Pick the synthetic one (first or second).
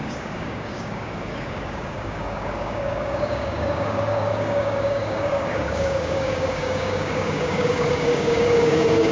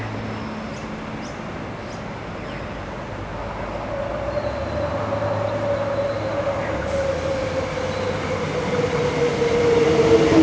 first